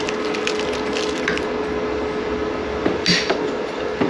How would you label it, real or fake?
real